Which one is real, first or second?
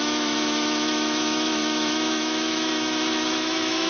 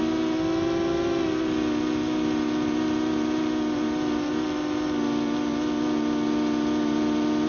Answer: second